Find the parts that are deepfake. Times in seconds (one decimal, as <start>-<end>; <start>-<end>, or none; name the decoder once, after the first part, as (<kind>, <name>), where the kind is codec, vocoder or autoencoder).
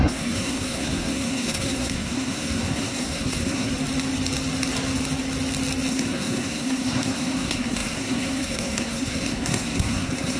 0.0-3.7 (codec, SNAC); 5.9-10.4